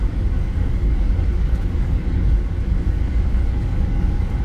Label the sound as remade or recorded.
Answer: remade